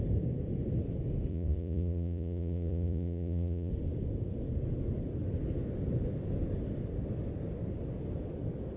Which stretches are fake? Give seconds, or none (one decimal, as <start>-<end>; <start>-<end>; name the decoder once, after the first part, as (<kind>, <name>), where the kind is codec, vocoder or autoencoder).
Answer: 1.3-3.7 (vocoder, Vocos)